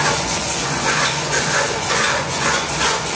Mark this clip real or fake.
fake